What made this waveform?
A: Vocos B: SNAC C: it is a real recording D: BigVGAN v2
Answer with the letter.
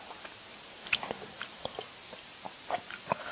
C